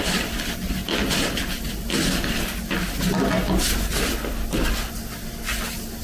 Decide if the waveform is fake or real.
real